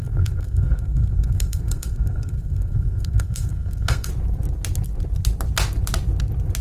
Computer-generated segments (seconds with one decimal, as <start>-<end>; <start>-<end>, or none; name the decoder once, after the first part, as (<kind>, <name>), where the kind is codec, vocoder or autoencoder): 0.0-4.1 (codec, SNAC)